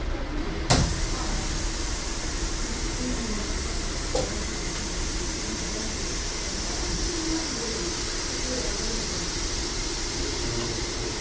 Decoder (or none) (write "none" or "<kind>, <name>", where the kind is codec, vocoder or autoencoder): none